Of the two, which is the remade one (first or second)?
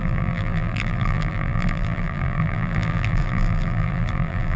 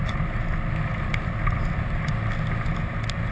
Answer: first